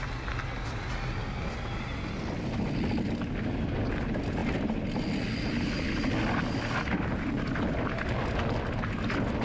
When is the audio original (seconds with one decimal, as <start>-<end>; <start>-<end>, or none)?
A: 0.0-9.4